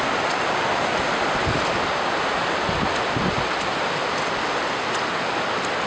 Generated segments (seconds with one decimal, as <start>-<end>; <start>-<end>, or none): none